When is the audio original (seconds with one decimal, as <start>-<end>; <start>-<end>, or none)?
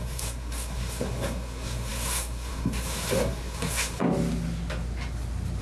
4.0-5.6